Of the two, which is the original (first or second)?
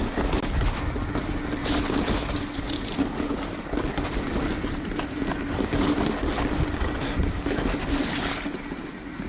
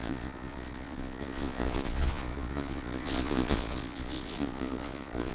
first